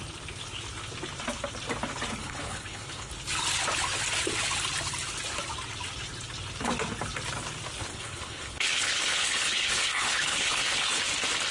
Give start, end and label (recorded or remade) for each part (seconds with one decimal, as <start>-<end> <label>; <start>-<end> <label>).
0.0-2.2 recorded; 2.2-3.1 remade; 3.1-7.9 recorded; 7.9-11.0 remade; 11.0-11.5 recorded